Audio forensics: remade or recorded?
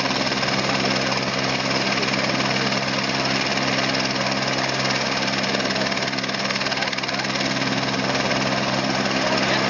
recorded